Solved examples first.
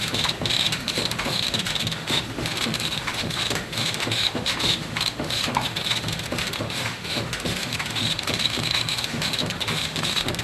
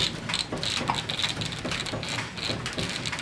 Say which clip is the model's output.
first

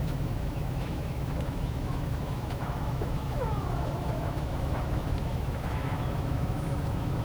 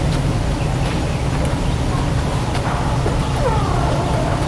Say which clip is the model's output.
first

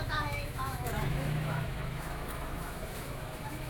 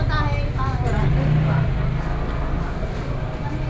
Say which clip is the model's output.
first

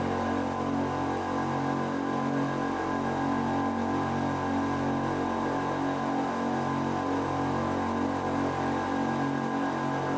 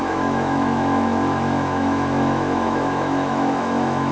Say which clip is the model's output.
second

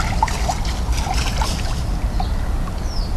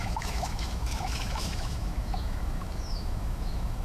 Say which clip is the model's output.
second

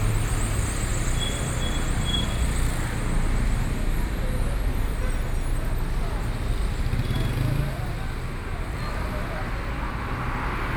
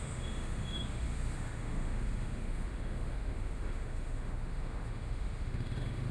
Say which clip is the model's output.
second